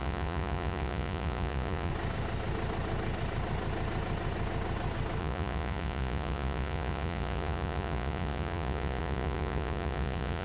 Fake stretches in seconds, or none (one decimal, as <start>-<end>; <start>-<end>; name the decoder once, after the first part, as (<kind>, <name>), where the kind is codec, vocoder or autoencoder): 0.0-1.9 (vocoder, Vocos); 5.2-10.4